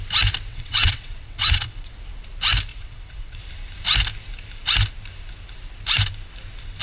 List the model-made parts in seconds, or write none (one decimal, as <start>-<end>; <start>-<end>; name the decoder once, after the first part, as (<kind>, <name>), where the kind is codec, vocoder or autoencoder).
0.5-1.9 (vocoder, WaveNeXt); 2.7-3.4